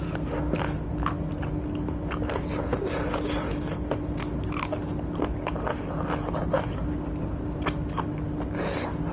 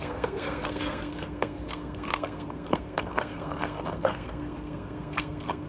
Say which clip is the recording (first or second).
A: first